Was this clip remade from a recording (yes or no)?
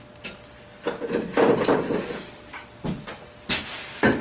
no